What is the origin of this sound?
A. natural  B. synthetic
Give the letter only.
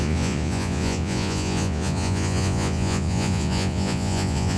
B